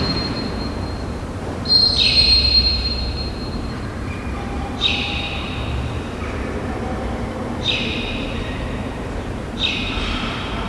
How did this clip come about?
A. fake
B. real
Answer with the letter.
A